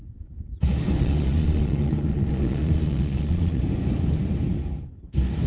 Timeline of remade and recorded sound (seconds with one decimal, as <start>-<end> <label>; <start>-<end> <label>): 0.0-1.0 recorded; 1.0-3.6 remade; 3.6-5.5 recorded